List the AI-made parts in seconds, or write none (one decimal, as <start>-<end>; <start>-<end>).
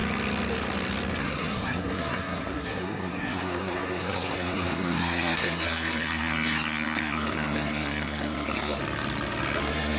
1.2-8.8; 9.6-10.0